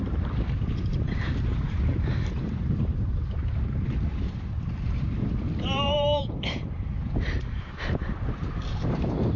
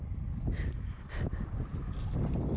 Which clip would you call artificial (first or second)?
first